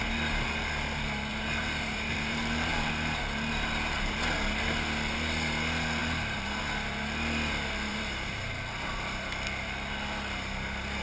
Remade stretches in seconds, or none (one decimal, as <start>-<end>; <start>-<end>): 1.3-2.9; 6.0-6.6; 7.9-8.6

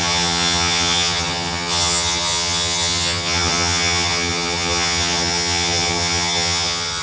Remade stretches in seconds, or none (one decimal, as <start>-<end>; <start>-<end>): 0.0-7.0

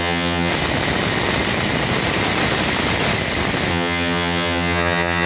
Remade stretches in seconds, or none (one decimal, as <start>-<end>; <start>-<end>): 0.0-0.5; 3.7-5.3

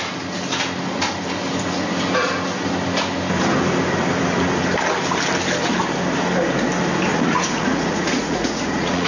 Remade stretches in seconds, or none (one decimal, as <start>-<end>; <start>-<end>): 7.1-9.1

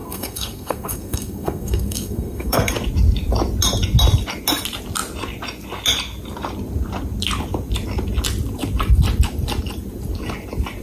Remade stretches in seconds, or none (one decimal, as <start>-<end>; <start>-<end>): 0.0-2.7

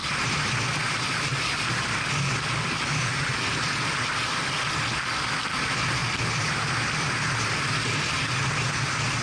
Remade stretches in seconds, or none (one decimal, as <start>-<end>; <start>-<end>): none

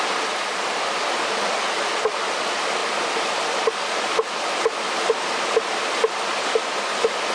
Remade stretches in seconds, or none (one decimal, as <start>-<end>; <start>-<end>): none

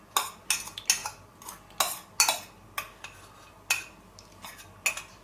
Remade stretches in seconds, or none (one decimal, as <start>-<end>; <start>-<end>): none